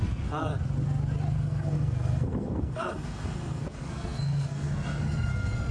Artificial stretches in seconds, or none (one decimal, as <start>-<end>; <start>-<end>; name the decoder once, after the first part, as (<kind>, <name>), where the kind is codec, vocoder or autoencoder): 0.0-0.5 (codec, SNAC); 1.3-5.7